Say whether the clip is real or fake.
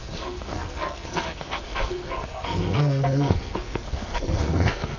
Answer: fake